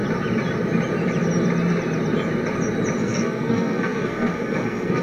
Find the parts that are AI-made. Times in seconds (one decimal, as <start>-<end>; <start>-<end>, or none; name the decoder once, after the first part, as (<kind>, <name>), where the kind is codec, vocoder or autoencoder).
3.0-5.0 (codec, SNAC)